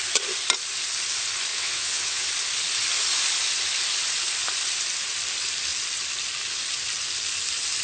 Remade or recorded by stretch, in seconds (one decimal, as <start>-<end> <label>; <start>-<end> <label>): 0.0-1.5 recorded; 1.5-2.3 remade; 2.3-7.8 recorded